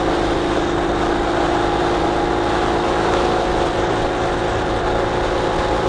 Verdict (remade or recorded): recorded